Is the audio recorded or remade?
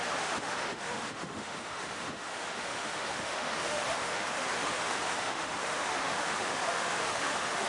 remade